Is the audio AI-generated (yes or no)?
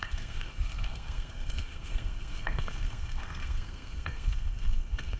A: yes